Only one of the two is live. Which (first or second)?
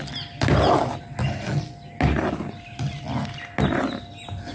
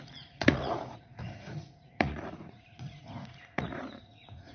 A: first